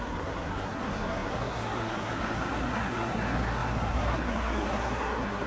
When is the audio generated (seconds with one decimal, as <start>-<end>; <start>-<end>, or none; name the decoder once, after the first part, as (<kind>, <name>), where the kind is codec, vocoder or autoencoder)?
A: 0.0-5.5 (codec, SNAC)